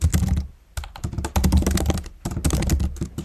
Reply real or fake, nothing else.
real